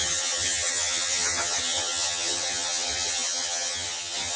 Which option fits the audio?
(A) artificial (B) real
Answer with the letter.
A